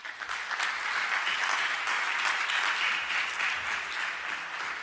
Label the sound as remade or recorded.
recorded